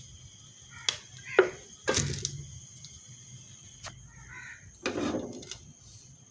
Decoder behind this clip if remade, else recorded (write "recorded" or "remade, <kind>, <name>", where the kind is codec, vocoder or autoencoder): recorded